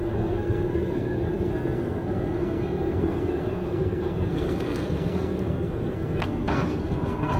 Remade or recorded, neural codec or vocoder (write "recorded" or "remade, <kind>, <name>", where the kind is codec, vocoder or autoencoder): remade, codec, SNAC